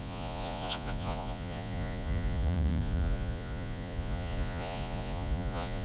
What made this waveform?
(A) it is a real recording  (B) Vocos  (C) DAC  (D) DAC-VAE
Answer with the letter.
B